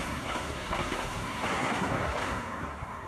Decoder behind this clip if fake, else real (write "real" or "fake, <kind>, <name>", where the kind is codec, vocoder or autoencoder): fake, codec, SNAC